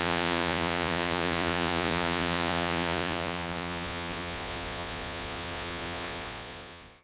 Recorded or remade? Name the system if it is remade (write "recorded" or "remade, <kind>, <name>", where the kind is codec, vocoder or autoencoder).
remade, vocoder, Vocos